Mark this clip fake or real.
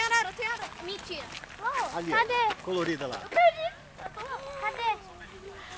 real